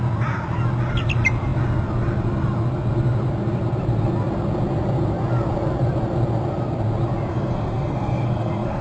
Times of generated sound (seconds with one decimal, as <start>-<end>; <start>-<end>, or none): 7.3-8.8